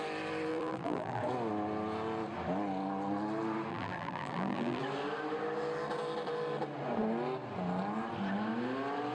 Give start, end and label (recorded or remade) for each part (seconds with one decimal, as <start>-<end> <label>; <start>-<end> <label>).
0.0-0.5 recorded; 0.5-1.2 remade; 1.2-3.7 recorded; 3.7-4.8 remade; 4.8-9.1 recorded